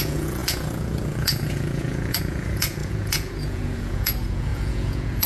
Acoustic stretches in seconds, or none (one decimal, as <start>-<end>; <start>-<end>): none